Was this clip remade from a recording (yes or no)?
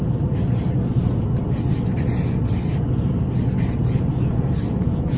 no